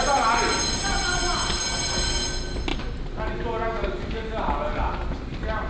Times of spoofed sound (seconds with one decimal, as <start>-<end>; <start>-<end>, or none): none